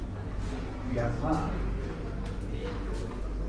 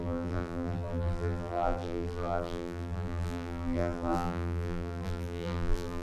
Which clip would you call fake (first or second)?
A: second